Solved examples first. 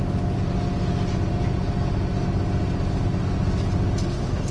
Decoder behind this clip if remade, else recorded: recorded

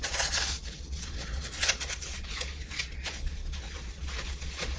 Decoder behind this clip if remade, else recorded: remade, vocoder, Vocos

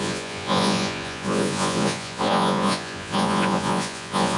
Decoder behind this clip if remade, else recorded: remade, vocoder, Vocos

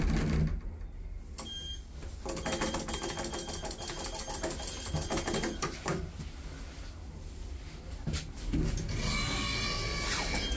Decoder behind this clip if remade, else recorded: recorded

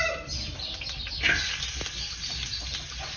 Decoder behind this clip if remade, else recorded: recorded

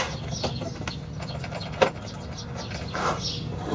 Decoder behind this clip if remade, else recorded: recorded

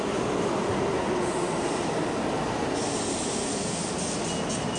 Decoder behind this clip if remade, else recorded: recorded